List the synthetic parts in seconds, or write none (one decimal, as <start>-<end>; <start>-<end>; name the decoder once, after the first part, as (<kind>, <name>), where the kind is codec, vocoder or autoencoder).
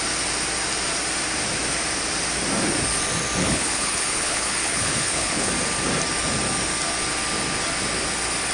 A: 3.4-5.5 (codec, HILCodec)